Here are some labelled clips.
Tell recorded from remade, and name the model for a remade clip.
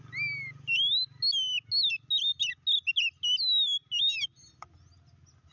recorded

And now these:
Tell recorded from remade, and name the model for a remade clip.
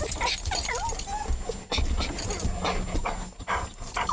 recorded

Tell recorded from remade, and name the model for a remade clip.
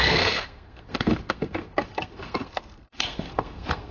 remade, codec, SNAC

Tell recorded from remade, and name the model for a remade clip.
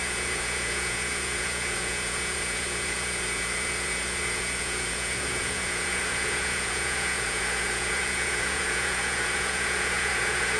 remade, vocoder, Vocos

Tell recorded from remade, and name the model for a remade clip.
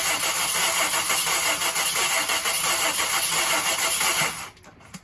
recorded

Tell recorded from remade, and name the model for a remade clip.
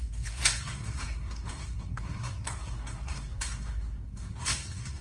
remade, codec, SNAC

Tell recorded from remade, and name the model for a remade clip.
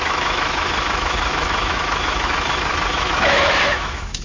remade, autoencoder, DAC-VAE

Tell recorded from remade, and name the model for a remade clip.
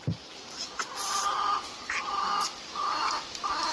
recorded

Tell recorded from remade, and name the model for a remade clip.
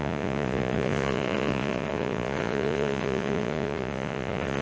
remade, vocoder, Vocos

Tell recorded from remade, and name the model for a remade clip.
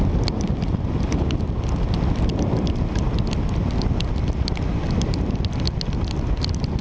recorded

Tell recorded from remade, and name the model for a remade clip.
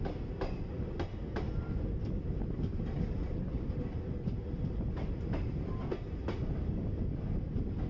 recorded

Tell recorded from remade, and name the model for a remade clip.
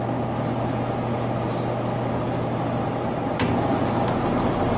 recorded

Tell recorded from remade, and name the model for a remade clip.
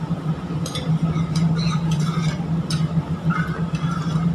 recorded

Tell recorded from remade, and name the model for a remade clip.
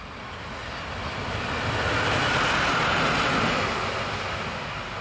recorded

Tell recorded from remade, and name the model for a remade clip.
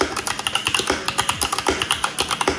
recorded